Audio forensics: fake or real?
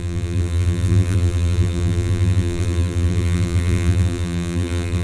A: fake